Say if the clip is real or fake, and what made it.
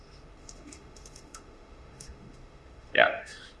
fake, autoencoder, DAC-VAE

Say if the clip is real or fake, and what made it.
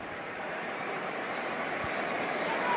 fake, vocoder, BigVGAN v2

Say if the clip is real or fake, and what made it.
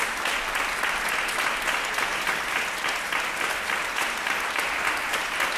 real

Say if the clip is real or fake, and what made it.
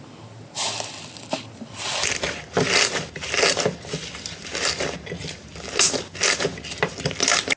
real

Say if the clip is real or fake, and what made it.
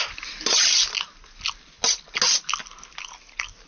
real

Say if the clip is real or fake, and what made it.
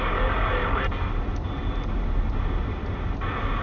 real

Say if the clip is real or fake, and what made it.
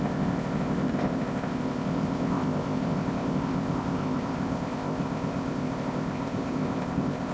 fake, codec, ZipCodec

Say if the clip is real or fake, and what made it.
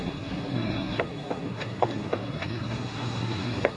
fake, codec, SNAC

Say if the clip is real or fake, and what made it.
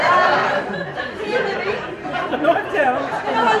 fake, vocoder, BigVGAN v2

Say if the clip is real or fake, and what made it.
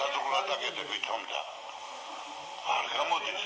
real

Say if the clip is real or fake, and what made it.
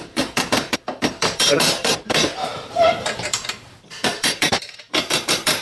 fake, vocoder, BigVGAN v2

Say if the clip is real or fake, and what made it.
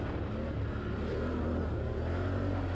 real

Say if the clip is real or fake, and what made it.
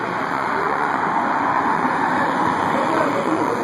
fake, vocoder, Vocos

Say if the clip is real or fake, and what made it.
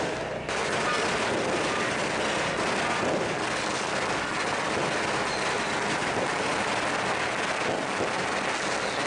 real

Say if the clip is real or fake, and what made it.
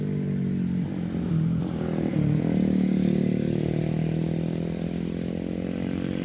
real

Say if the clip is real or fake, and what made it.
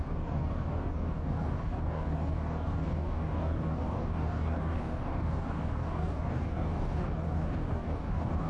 fake, codec, DAC